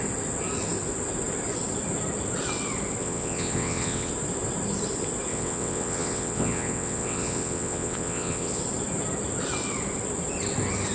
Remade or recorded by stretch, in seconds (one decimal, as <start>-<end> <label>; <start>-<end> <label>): 0.0-3.0 recorded; 3.0-4.1 remade; 4.1-5.3 recorded; 5.3-8.6 remade; 8.6-10.9 recorded